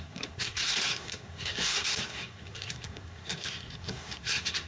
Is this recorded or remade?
remade